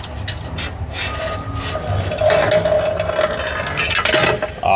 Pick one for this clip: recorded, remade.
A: recorded